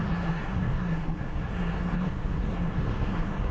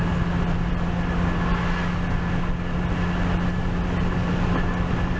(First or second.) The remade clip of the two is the first